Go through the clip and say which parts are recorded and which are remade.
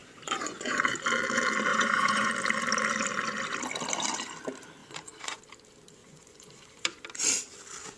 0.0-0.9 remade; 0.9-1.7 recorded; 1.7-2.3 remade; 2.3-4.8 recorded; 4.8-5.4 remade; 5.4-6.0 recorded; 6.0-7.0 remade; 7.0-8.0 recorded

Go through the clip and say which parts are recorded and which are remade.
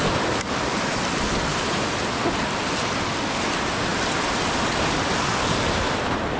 0.0-6.4 recorded